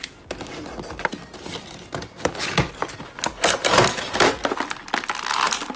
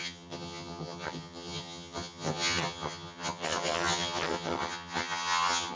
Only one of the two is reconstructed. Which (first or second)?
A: second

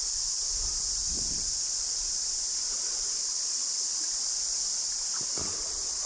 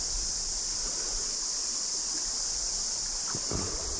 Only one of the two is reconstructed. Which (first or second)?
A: first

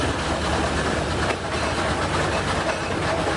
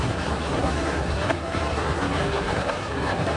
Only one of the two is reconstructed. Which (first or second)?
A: second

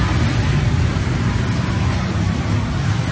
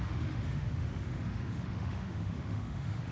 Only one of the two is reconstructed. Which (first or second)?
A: second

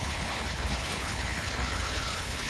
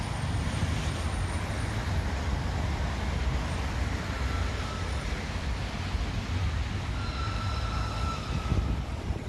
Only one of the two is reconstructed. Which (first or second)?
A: first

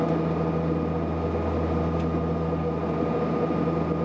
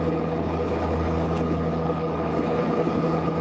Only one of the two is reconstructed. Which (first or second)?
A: second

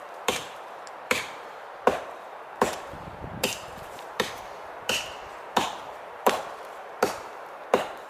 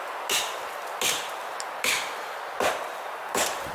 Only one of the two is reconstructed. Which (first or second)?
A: first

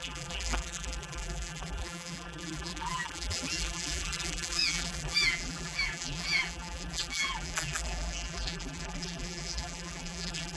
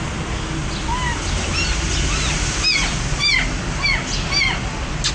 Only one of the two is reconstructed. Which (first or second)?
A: first